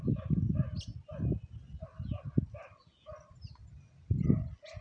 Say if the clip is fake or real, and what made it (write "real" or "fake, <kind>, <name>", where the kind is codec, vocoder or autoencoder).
real